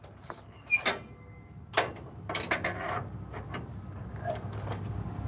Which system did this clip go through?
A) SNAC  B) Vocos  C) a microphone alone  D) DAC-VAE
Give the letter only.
C